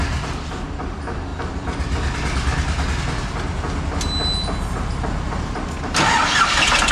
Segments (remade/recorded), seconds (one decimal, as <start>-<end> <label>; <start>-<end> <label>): 0.0-6.9 recorded